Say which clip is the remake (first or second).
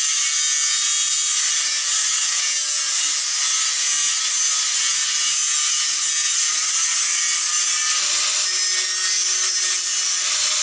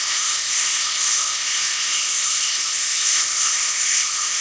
second